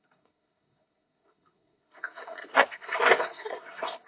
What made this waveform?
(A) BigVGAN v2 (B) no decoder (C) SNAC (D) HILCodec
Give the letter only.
C